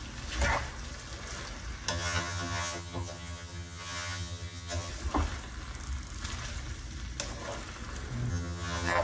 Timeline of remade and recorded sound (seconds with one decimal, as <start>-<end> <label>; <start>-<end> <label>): 0.0-1.9 recorded; 1.9-4.9 remade; 4.9-8.3 recorded; 8.3-9.0 remade